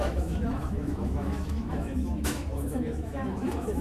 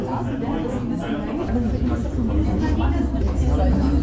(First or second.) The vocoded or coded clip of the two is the first